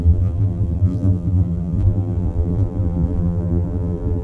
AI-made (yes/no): yes